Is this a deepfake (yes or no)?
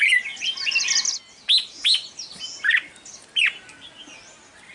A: no